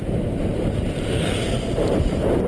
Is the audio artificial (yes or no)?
yes